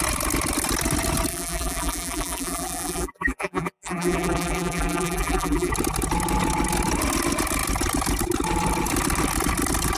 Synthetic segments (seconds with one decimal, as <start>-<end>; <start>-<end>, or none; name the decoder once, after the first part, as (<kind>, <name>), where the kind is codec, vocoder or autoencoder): 1.3-5.7 (vocoder, BigVGAN v2)